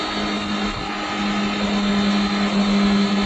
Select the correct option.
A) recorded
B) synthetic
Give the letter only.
A